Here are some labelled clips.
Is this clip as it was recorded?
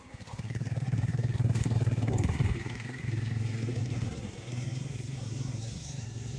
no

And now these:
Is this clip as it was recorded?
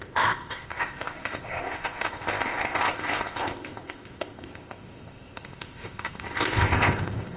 no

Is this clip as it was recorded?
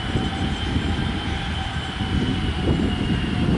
yes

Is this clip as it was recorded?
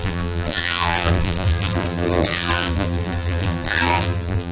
no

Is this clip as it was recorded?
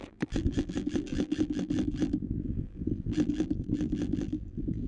no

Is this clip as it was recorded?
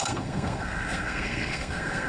no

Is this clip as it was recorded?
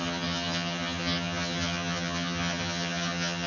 no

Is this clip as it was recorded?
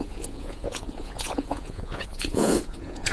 no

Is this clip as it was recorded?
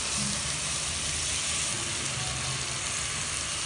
yes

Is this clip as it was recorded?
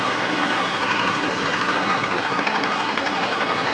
no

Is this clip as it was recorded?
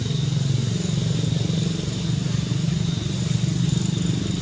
yes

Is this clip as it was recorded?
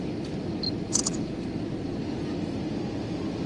yes